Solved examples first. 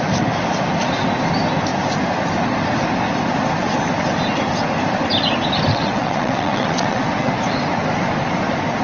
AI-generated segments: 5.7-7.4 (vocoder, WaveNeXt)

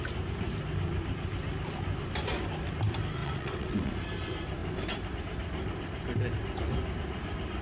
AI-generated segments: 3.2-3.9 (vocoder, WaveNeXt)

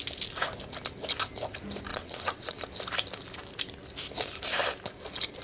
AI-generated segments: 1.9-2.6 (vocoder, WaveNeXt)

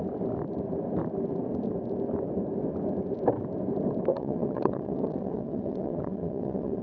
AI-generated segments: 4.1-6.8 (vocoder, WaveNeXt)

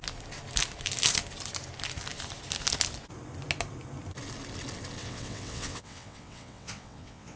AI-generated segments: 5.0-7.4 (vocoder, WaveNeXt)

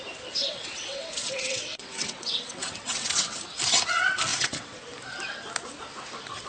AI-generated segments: 0.4-3.4 (vocoder, WaveNeXt); 4.3-4.8

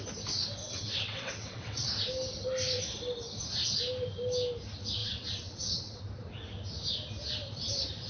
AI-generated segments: 0.6-1.9 (vocoder, WaveNeXt); 5.0-6.0